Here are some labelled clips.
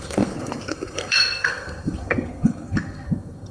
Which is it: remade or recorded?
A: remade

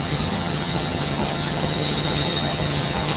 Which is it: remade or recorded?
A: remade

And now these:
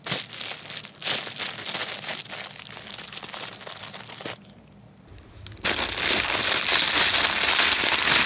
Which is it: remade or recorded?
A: recorded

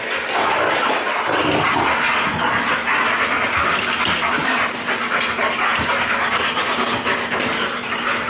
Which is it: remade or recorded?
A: recorded